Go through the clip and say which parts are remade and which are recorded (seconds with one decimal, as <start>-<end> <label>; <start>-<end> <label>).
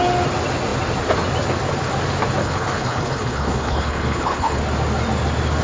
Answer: 0.0-2.4 recorded; 2.4-4.6 remade; 4.6-5.6 recorded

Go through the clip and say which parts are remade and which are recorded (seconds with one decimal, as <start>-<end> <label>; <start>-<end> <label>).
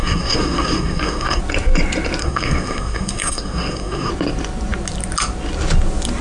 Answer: 0.0-1.4 remade; 1.4-2.2 recorded; 2.2-4.1 remade; 4.1-6.2 recorded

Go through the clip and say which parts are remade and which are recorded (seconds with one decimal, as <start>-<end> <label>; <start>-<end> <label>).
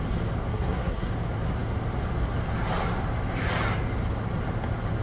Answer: 0.0-0.5 recorded; 0.5-1.1 remade; 1.1-5.0 recorded